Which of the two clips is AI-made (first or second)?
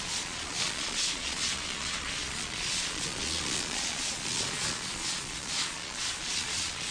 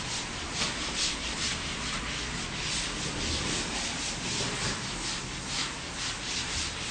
first